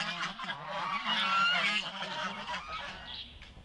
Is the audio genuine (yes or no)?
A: yes